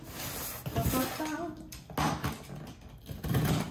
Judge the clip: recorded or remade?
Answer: recorded